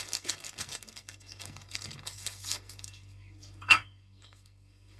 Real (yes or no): no